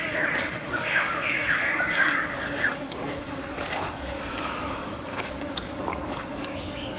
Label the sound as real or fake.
fake